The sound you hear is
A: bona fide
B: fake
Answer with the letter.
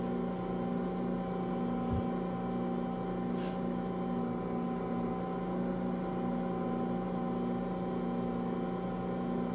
A